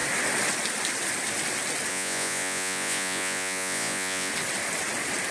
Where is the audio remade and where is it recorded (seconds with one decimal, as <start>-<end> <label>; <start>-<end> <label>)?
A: 0.0-1.9 recorded; 1.9-4.3 remade; 4.3-5.3 recorded